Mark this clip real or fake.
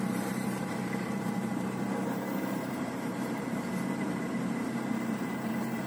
fake